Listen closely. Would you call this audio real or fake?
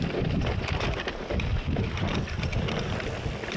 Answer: fake